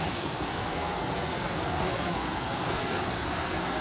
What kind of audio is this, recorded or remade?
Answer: remade